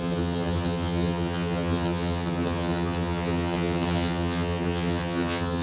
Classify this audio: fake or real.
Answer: fake